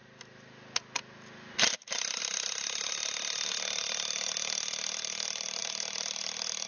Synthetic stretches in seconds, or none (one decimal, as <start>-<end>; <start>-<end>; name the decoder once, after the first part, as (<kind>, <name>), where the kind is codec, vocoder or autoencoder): none

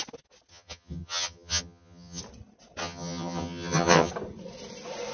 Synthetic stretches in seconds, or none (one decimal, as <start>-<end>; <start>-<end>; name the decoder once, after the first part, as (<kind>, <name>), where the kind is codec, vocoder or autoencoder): 0.5-2.2 (vocoder, HiFi-GAN); 2.8-4.1

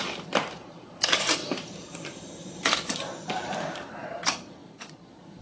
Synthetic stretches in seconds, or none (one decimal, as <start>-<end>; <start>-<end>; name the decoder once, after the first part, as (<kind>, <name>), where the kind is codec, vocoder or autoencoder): 0.0-5.4 (vocoder, BigVGAN v2)

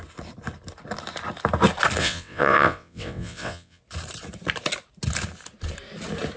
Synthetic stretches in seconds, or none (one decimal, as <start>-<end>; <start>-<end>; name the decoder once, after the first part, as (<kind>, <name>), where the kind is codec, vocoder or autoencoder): 2.0-3.8 (vocoder, WaveNeXt)

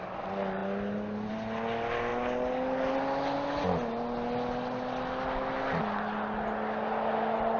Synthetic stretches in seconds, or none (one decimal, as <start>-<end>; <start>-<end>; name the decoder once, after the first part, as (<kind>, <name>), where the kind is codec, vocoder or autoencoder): none

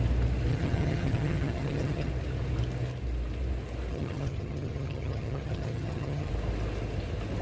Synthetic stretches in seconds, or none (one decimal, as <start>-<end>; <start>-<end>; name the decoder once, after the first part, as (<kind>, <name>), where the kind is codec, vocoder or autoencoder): 0.5-2.1 (vocoder, HiFi-GAN); 3.9-6.3

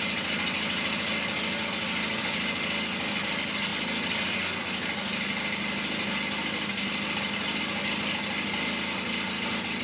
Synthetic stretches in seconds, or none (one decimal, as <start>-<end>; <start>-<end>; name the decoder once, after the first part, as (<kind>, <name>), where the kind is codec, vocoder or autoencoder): none